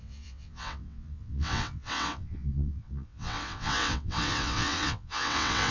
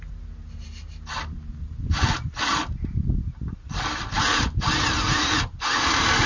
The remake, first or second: first